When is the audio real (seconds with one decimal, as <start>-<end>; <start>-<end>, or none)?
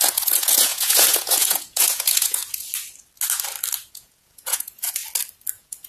2.4-3.9; 5.0-5.5